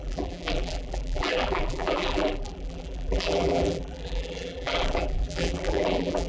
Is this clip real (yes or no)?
no